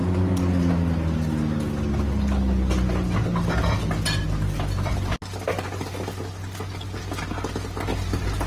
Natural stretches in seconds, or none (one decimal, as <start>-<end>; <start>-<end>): 0.7-7.9